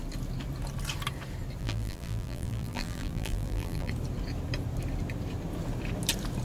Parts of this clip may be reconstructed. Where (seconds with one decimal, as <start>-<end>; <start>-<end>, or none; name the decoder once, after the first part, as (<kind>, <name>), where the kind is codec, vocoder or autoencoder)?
1.6-3.9 (vocoder, BigVGAN v2)